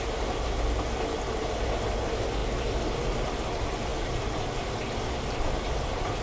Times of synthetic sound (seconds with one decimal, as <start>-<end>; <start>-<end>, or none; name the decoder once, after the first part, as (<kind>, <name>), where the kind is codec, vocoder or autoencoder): none